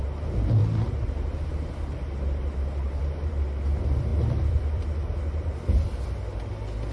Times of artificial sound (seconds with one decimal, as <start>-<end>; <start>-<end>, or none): 4.1-4.8